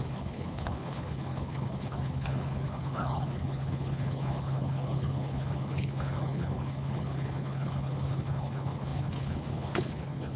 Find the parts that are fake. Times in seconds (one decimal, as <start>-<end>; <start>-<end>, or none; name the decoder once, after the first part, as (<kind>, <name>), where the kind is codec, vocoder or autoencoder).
0.0-10.4 (codec, HILCodec)